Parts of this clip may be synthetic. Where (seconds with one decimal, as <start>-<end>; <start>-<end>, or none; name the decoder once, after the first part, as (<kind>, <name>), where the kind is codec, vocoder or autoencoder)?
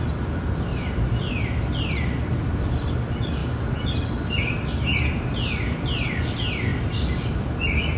0.0-3.4 (vocoder, BigVGAN v2); 6.2-8.0